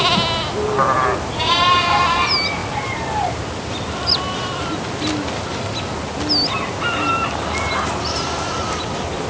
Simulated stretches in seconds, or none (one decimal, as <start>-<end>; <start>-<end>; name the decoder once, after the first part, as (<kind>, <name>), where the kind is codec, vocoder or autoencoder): none